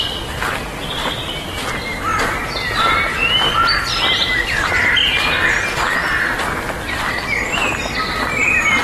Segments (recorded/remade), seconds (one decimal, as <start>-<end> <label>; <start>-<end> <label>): 0.0-8.8 recorded